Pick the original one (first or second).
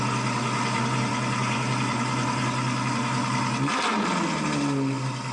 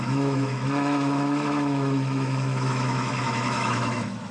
first